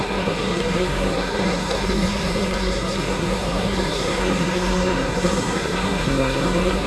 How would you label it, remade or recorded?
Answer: remade